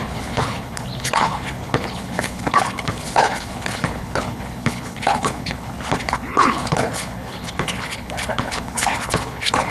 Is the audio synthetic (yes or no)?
yes